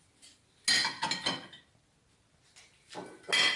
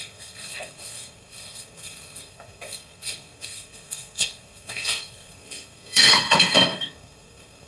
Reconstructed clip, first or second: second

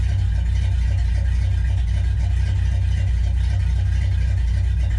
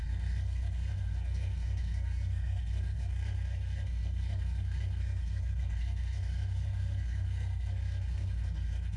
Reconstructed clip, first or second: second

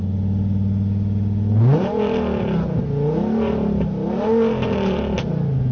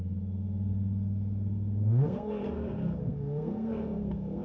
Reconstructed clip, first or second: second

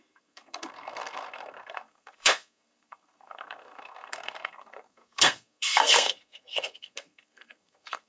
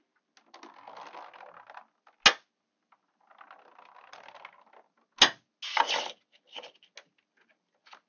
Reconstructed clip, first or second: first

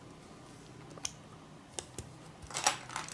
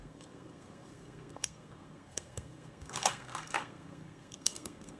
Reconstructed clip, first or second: second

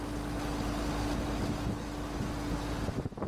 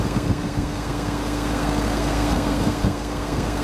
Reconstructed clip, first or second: second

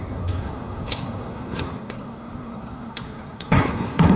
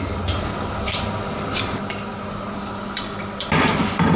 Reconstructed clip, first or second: first